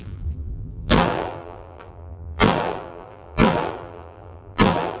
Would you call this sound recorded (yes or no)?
no